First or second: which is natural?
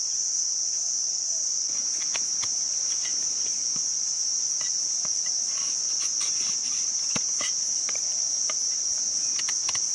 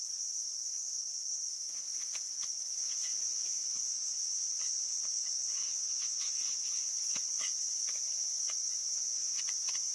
first